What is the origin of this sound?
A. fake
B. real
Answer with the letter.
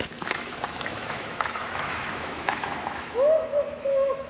A